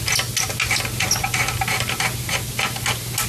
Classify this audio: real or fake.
real